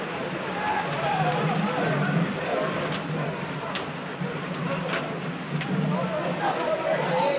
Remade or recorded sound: recorded